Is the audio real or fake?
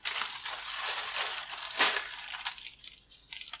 real